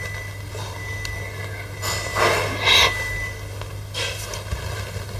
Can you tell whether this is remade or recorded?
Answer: recorded